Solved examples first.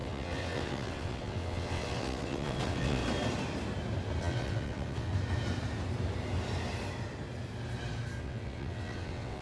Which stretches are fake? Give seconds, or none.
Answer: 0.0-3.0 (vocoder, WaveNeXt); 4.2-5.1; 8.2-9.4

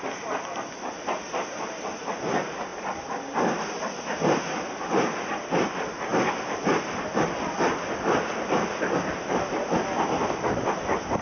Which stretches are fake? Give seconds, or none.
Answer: none

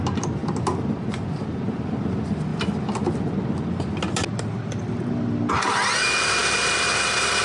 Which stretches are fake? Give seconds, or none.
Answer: none

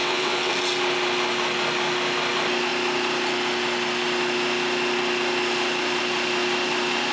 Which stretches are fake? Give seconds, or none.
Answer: 0.0-0.5 (vocoder, WaveNeXt)